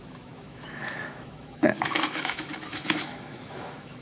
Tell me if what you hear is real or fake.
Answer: fake